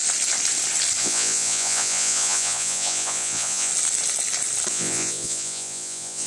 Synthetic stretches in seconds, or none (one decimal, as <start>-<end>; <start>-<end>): 1.0-3.7; 4.7-6.3